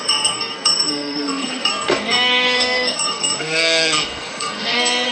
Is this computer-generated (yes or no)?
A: yes